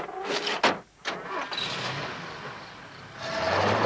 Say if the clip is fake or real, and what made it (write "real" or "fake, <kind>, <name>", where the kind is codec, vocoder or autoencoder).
real